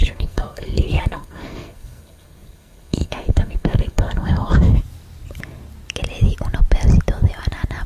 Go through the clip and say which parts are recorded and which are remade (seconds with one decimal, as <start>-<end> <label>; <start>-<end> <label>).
0.0-4.7 remade; 4.7-7.9 recorded